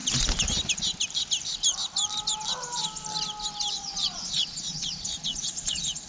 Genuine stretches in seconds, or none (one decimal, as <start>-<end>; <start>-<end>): 0.0-3.7